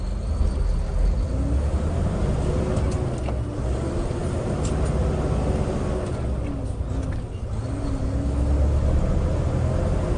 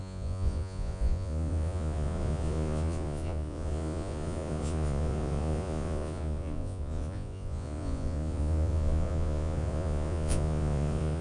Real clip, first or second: first